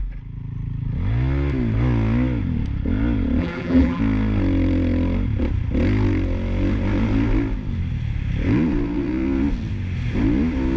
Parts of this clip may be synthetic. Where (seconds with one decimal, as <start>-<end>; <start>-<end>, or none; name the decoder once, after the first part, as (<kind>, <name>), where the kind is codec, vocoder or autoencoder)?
3.4-4.0 (vocoder, BigVGAN v2)